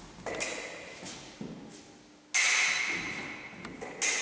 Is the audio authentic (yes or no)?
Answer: yes